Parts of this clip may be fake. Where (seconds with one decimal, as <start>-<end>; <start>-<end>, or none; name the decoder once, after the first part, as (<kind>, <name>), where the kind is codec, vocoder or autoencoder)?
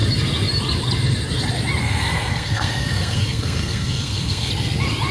1.8-4.5 (codec, SNAC)